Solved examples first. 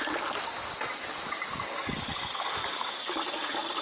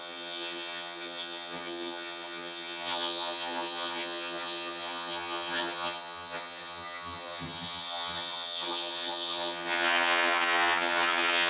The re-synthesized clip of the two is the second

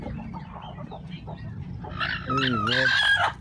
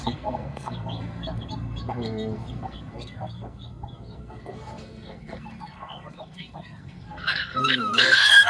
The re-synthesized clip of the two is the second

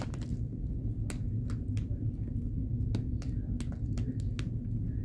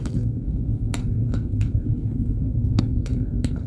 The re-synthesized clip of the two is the second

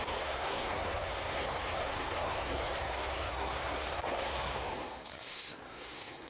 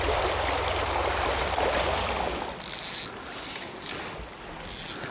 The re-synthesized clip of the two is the first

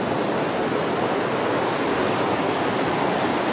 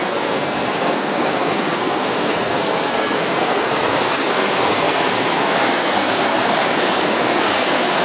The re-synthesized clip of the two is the second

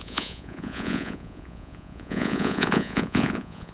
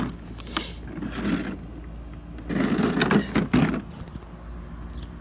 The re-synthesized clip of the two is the first